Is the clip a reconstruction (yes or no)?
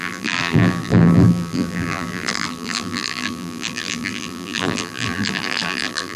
yes